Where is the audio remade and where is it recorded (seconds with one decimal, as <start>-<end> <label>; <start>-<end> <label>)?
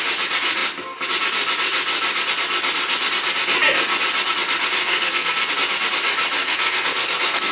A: 0.0-4.8 recorded; 4.8-5.5 remade; 5.5-6.4 recorded; 6.4-7.5 remade